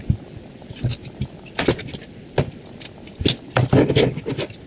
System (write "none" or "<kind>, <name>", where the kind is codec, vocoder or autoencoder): none